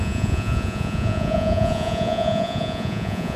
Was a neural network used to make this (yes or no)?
yes